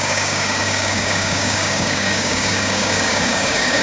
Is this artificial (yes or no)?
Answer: yes